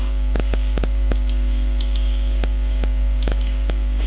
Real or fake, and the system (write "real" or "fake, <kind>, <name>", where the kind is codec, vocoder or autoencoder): fake, codec, DAC